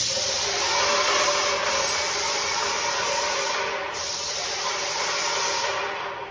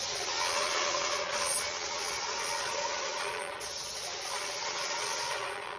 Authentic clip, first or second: first